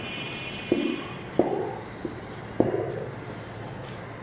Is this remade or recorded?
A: recorded